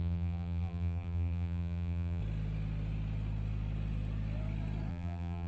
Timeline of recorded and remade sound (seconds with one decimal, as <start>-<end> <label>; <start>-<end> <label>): 0.0-2.2 remade; 2.2-4.9 recorded; 4.9-5.5 remade